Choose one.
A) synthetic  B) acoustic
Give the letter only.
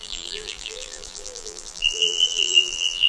A